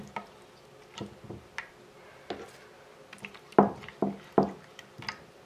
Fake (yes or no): no